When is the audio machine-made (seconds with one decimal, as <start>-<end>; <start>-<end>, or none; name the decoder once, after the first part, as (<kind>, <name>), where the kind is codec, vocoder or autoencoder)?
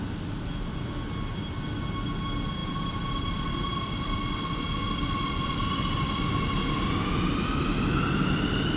2.6-6.3 (vocoder, BigVGAN v2)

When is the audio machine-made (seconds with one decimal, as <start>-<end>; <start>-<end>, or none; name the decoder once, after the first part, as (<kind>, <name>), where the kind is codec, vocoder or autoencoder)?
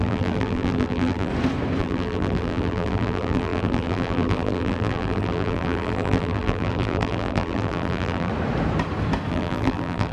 0.0-1.3 (vocoder, BigVGAN v2); 1.8-8.3; 9.3-10.1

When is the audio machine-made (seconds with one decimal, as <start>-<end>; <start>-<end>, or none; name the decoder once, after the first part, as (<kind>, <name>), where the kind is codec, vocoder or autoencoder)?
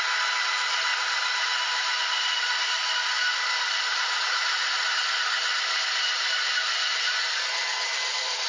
0.9-5.0 (vocoder, BigVGAN v2)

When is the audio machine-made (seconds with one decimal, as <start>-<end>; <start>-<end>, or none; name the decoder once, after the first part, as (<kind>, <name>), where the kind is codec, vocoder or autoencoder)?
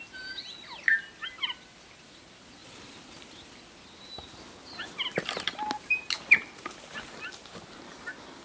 none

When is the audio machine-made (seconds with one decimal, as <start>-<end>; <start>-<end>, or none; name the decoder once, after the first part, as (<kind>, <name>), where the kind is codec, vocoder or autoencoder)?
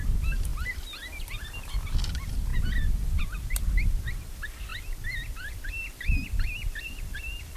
none